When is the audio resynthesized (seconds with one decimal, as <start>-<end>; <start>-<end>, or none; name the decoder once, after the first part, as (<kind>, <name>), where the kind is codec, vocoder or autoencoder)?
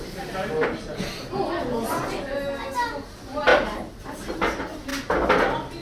3.5-4.4 (vocoder, BigVGAN v2)